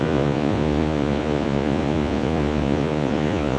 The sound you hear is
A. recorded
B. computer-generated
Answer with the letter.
B